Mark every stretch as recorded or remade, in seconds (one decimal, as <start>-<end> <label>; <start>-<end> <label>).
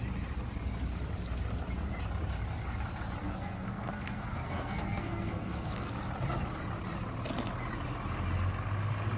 0.0-3.2 recorded; 3.2-5.9 remade; 5.9-9.2 recorded